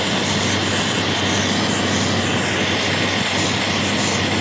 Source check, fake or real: real